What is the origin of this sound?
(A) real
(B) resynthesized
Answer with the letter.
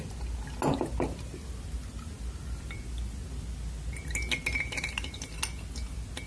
A